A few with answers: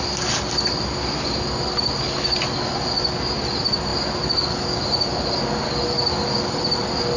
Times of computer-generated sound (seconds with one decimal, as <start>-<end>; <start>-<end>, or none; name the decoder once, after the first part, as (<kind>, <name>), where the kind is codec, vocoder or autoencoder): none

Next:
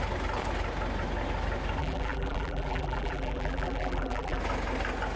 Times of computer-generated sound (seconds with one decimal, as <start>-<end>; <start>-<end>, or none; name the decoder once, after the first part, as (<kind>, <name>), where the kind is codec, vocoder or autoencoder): 1.8-4.4 (vocoder, BigVGAN v2)

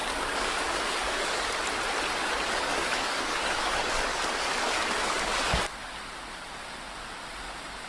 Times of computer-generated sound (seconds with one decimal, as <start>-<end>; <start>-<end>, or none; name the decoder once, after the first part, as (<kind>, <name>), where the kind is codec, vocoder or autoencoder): 0.0-1.6 (codec, DAC); 2.2-5.9

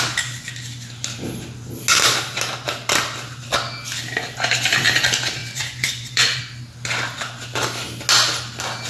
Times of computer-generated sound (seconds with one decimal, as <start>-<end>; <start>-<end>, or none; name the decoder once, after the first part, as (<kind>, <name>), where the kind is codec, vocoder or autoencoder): 5.4-6.4 (vocoder, Vocos)

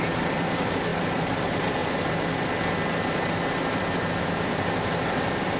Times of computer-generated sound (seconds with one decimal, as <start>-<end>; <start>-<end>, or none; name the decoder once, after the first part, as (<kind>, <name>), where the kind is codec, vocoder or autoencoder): 0.0-1.8 (vocoder, BigVGAN v2); 4.2-5.6

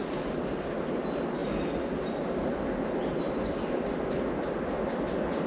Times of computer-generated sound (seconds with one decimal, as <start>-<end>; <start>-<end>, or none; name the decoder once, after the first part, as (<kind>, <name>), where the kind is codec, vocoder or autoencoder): none

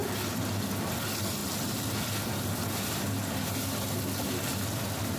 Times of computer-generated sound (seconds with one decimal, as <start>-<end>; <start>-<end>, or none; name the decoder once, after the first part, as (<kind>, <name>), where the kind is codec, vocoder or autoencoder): none

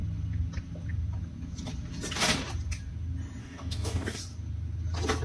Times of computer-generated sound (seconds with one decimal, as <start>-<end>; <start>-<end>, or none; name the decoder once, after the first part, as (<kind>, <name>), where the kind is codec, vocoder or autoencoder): 3.4-4.2 (codec, DAC)